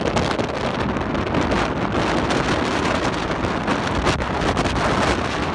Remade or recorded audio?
recorded